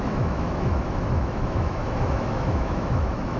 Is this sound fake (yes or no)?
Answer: yes